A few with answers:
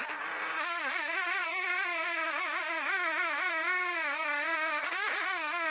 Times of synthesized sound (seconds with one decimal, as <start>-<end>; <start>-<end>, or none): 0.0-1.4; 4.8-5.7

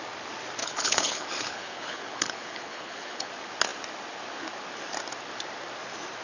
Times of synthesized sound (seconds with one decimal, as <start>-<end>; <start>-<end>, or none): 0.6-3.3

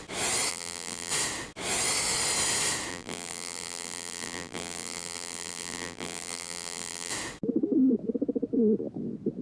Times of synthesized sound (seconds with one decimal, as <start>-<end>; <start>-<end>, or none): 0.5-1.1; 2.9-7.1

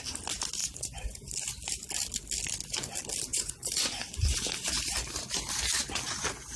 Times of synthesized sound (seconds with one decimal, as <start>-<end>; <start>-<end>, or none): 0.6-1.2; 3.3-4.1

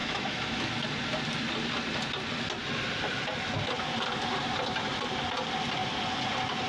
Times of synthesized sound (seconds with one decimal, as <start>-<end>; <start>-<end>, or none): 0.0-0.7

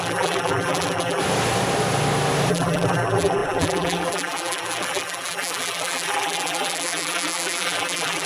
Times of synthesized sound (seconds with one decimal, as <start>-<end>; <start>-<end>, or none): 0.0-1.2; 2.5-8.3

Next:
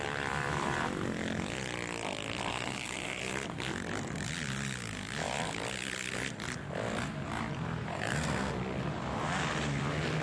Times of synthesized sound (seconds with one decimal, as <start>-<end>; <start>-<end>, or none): 2.5-3.2; 7.9-8.5